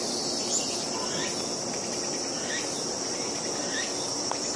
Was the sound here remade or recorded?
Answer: recorded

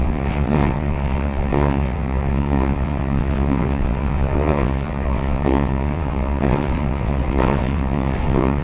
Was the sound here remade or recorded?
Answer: remade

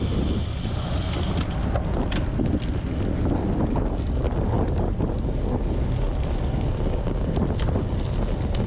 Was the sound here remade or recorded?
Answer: recorded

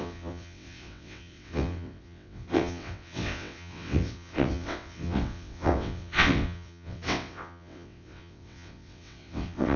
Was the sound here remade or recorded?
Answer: remade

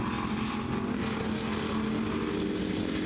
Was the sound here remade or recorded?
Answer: recorded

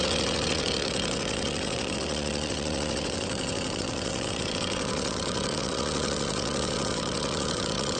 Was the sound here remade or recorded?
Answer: remade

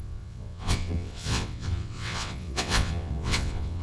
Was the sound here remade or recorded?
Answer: remade